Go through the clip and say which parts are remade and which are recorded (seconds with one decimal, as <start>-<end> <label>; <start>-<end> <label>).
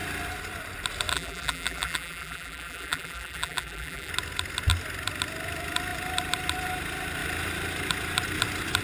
0.0-1.1 recorded; 1.1-4.1 remade; 4.1-8.8 recorded